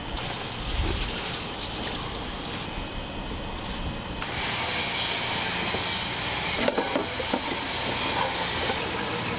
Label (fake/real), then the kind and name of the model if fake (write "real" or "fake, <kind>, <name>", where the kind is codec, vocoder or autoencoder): real